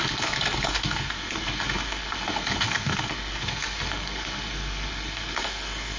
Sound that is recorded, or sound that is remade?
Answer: remade